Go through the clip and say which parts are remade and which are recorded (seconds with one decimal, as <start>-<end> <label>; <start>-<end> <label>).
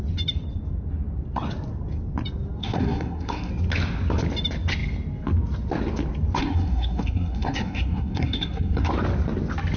0.0-2.6 recorded; 2.6-3.5 remade; 3.5-6.4 recorded; 6.4-8.9 remade; 8.9-9.8 recorded